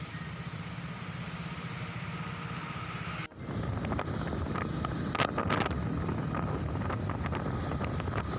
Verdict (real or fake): real